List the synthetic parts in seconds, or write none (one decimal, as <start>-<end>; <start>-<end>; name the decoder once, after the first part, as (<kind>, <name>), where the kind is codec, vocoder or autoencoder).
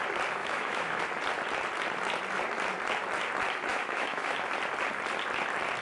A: 0.4-1.0 (autoencoder, DAC-VAE); 3.7-4.5